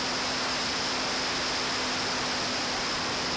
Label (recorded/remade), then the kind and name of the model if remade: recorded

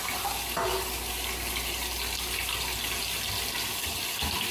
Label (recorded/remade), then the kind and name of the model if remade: recorded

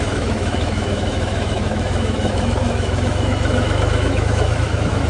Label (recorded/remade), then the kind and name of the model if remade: remade, autoencoder, DAC-VAE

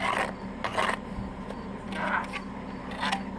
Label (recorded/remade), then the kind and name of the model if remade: recorded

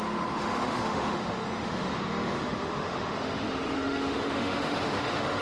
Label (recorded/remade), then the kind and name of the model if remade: remade, autoencoder, DAC-VAE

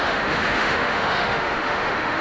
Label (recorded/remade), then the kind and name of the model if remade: remade, autoencoder, DAC-VAE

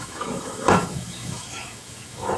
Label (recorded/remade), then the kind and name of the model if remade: remade, autoencoder, DAC-VAE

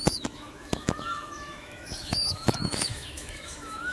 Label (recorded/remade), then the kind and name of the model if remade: remade, autoencoder, DAC-VAE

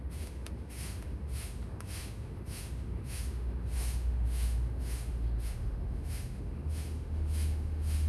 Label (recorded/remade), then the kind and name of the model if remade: remade, autoencoder, DAC-VAE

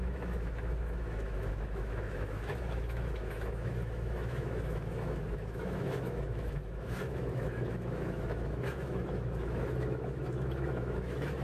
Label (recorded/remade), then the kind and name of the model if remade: remade, autoencoder, DAC-VAE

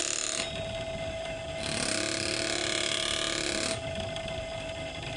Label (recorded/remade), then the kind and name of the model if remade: recorded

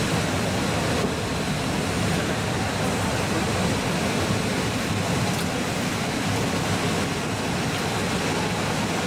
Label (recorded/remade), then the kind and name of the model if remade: recorded